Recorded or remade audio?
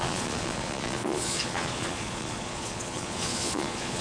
remade